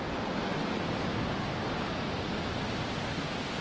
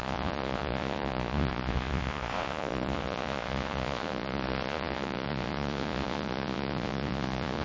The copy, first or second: second